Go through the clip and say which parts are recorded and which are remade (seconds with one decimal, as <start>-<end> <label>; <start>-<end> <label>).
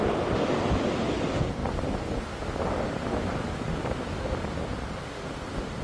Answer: 0.0-5.8 recorded